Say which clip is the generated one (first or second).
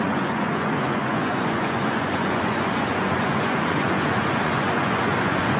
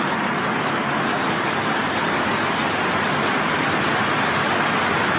first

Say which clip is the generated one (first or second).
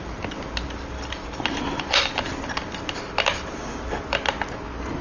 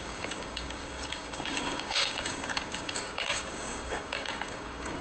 second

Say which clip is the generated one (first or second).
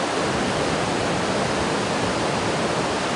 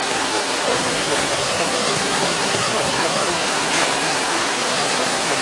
second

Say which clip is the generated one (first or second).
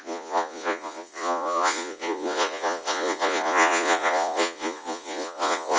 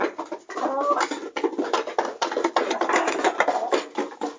first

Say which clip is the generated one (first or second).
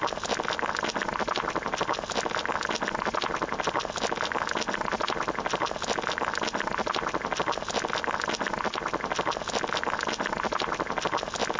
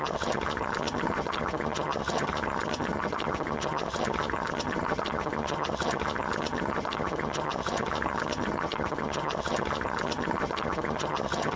second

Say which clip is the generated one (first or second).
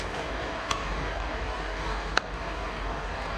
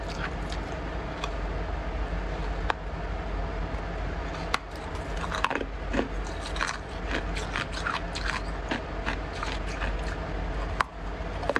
first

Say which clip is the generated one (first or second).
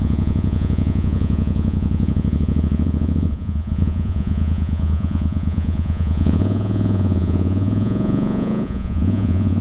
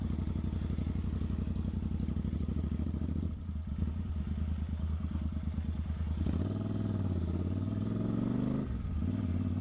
first